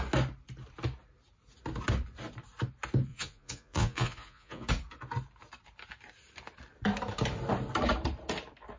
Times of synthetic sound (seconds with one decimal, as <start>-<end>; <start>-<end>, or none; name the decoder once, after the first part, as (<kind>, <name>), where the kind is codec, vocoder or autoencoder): 3.1-4.7 (vocoder, Vocos)